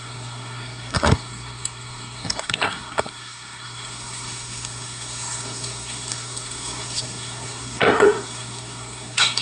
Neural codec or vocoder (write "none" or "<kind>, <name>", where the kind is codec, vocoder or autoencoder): codec, SNAC